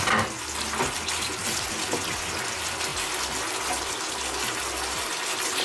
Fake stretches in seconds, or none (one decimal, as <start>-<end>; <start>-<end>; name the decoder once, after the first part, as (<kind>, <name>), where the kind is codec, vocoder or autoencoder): none